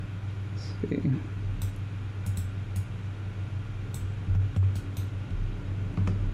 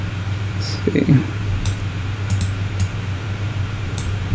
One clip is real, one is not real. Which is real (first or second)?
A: first